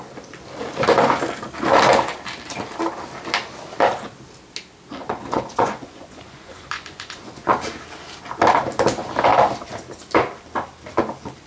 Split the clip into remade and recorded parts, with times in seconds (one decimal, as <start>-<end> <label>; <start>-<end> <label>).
0.0-5.0 recorded; 5.0-7.5 remade; 7.5-11.5 recorded